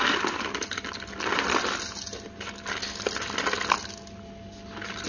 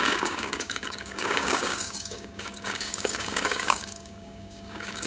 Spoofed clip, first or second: second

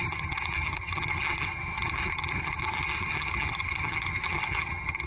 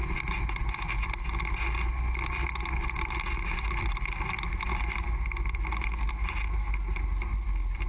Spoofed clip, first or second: first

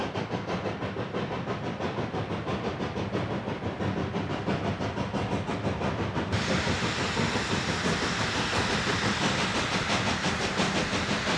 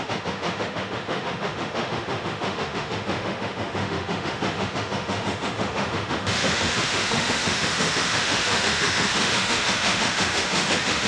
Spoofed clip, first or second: second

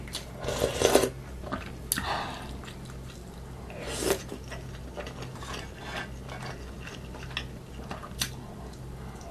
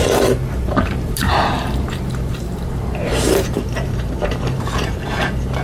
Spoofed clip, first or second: second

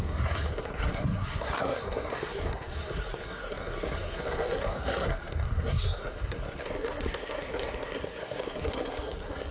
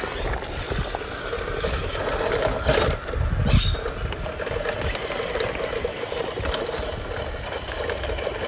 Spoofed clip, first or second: first